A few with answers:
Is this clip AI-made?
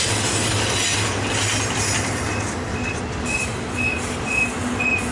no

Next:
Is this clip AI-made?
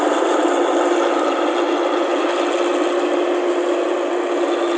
no